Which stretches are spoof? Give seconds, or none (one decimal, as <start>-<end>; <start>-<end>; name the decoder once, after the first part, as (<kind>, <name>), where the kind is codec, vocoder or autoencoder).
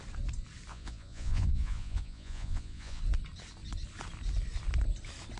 0.7-3.0 (vocoder, Vocos)